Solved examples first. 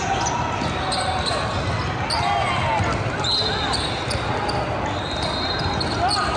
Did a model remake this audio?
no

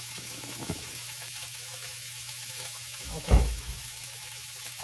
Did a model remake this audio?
yes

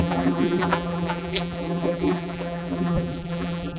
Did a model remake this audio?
yes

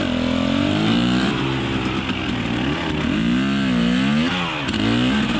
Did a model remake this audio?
no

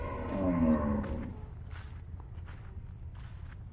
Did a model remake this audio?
no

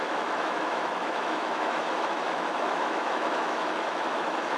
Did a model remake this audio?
yes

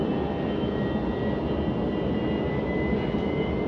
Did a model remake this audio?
no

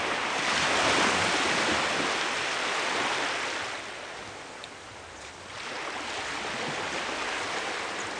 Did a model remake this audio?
no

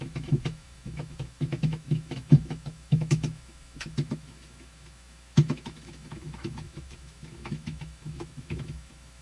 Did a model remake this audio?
yes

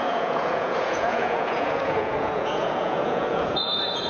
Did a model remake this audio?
yes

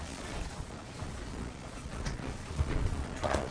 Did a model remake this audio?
yes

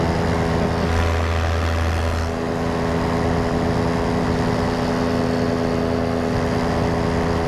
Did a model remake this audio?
no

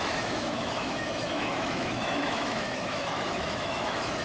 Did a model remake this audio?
yes